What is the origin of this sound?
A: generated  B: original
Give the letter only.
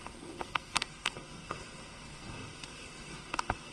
A